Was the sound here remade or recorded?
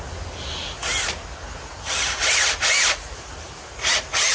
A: recorded